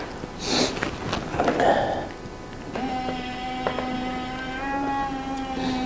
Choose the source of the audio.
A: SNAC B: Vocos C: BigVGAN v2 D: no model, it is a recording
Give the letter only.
D